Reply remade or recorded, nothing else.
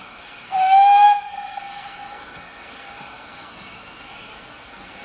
remade